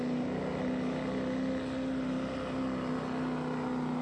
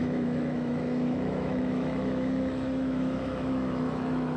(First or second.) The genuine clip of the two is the first